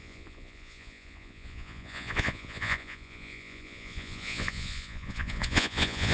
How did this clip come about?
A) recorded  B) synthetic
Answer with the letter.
B